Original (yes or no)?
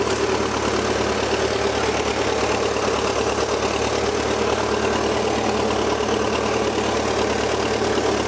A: yes